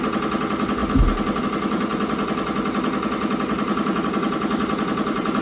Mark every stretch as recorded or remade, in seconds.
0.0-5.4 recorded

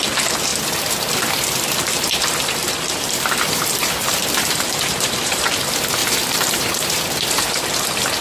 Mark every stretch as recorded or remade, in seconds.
0.0-2.6 recorded; 2.6-5.4 remade; 5.4-6.0 recorded; 6.0-7.4 remade; 7.4-8.2 recorded

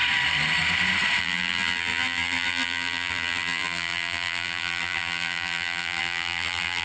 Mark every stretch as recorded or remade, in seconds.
0.0-1.2 recorded; 1.2-6.8 remade

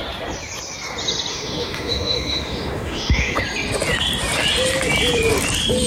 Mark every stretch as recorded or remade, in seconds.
0.0-1.3 recorded; 1.3-3.4 remade; 3.4-5.9 recorded

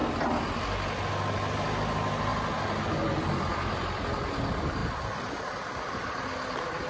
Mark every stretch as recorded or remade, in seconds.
0.0-1.1 remade; 1.1-4.8 recorded; 4.8-5.9 remade; 5.9-6.9 recorded

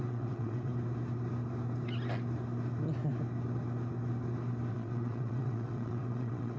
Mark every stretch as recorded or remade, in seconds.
0.0-0.7 remade; 0.7-4.7 recorded; 4.7-6.6 remade

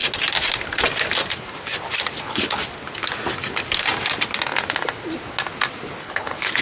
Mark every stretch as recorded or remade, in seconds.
0.0-2.2 recorded; 2.2-2.6 remade; 2.6-6.0 recorded; 6.0-6.6 remade

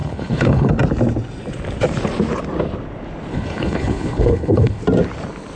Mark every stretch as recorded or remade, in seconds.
0.0-0.7 remade; 0.7-3.3 recorded; 3.3-4.8 remade; 4.8-5.6 recorded